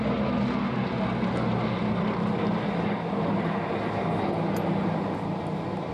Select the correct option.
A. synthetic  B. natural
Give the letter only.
B